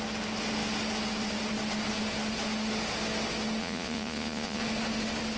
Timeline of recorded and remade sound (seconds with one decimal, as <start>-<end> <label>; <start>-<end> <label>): 0.0-3.6 recorded; 3.6-4.6 remade; 4.6-5.4 recorded